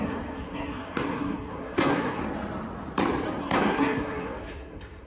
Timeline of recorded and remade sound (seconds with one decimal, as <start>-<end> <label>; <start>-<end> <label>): 0.0-2.2 remade; 2.2-3.4 recorded; 3.4-5.1 remade